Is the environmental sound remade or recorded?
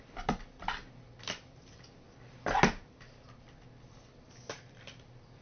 recorded